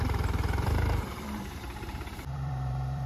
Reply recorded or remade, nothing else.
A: remade